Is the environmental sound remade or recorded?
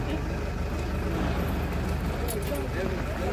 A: recorded